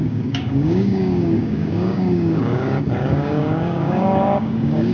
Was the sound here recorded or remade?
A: remade